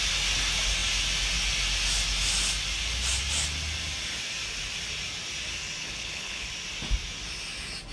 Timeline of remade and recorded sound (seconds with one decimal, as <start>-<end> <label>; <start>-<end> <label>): 0.0-5.8 recorded; 5.8-6.5 remade; 6.5-7.9 recorded